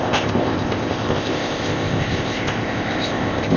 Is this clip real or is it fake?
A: fake